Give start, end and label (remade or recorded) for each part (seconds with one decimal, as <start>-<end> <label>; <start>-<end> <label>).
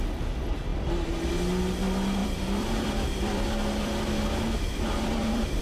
0.0-0.7 recorded; 0.7-1.3 remade; 1.3-2.2 recorded; 2.2-5.6 remade